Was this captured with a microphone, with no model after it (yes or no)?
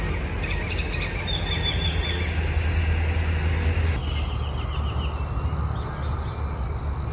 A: yes